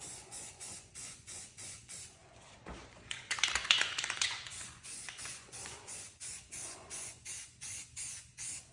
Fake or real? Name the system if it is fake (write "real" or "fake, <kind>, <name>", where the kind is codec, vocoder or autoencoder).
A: fake, vocoder, Vocos